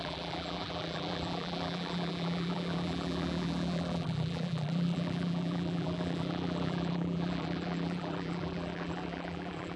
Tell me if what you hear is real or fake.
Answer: fake